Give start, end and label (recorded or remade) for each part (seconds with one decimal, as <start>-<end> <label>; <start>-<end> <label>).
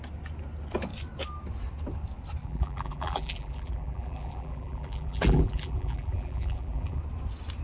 0.0-2.4 recorded; 2.4-7.0 remade; 7.0-7.6 recorded